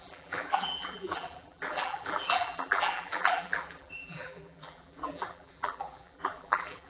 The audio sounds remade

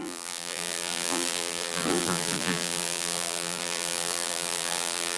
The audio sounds remade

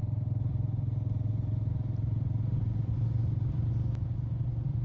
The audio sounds recorded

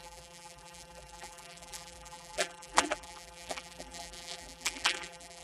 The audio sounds remade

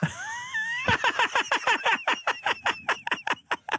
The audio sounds recorded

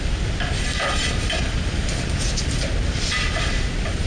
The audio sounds remade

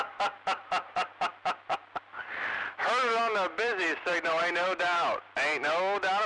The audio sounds recorded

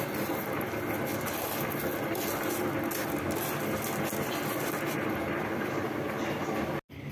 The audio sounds recorded